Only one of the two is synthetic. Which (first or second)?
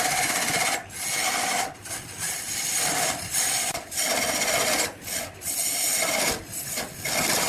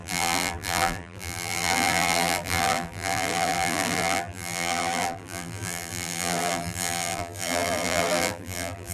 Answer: second